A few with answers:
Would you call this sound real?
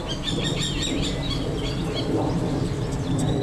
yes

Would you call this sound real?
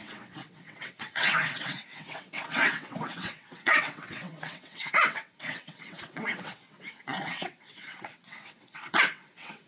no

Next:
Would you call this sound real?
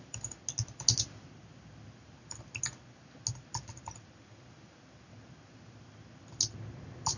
yes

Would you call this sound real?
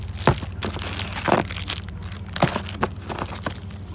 yes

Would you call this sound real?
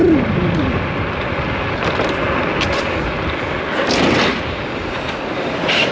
yes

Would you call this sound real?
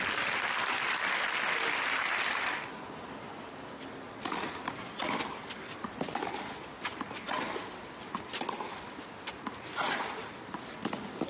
yes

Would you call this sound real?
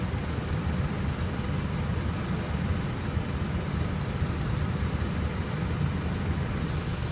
yes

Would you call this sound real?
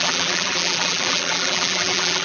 no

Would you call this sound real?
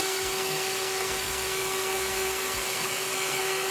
no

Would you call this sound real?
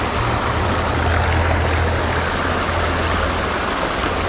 yes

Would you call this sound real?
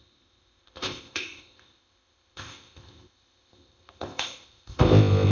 no